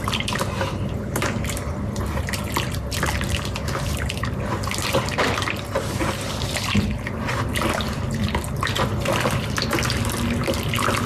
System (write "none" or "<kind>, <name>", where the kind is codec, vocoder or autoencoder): none